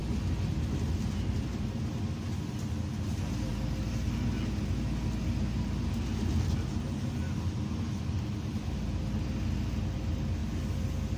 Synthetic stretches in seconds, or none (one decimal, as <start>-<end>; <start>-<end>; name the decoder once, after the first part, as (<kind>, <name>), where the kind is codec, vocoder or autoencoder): none